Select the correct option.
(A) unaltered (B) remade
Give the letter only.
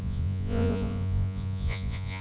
B